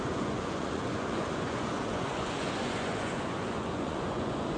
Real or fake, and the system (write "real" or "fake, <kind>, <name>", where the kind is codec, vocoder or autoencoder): fake, vocoder, Vocos